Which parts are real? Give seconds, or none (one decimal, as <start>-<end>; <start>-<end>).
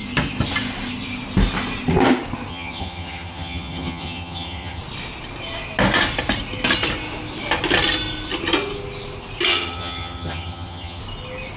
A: 0.0-2.5; 4.8-9.5; 11.0-11.6